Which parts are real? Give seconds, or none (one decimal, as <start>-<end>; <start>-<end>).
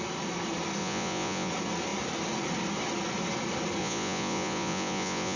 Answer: 0.0-0.8; 1.5-3.8